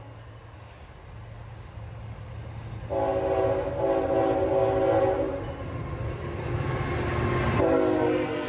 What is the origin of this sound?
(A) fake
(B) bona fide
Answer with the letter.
B